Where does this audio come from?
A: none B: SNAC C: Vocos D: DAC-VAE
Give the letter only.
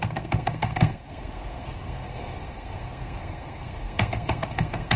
B